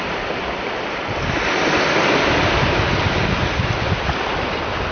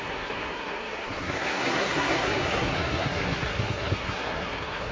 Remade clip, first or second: second